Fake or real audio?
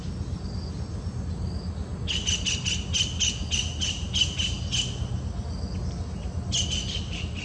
real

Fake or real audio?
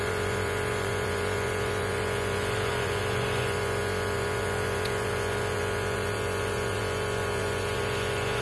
fake